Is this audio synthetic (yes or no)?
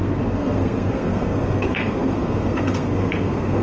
yes